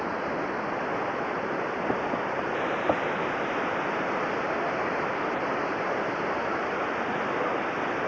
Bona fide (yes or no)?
yes